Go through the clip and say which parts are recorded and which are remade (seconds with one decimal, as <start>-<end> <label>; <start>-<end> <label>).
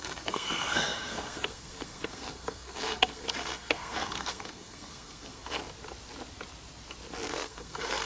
0.0-5.6 remade; 5.6-7.3 recorded; 7.3-8.1 remade